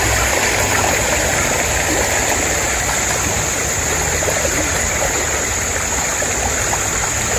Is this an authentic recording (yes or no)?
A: yes